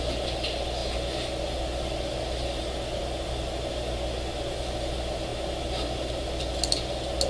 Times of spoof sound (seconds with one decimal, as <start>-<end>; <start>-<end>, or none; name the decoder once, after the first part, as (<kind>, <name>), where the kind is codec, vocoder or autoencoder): none